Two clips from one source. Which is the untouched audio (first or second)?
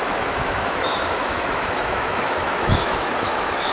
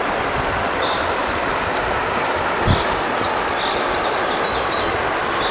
second